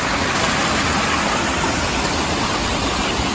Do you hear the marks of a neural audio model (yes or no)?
no